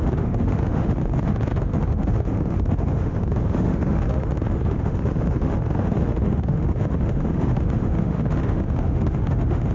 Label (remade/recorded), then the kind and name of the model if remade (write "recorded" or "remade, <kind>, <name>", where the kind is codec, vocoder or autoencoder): remade, autoencoder, DAC-VAE